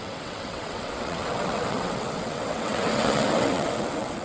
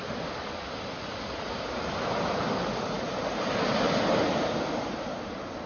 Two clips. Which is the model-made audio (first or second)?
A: first